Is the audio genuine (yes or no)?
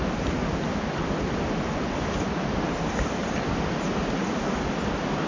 yes